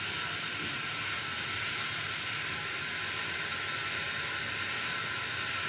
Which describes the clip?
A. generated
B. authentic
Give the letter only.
B